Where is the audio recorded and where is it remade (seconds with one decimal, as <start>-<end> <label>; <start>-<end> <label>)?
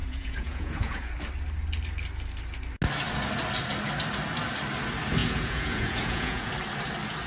0.0-1.1 remade; 1.1-5.2 recorded; 5.2-6.5 remade; 6.5-7.3 recorded